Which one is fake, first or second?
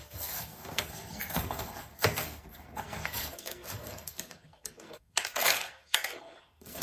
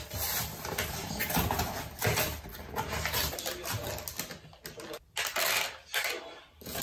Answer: first